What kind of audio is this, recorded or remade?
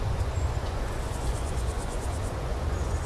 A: remade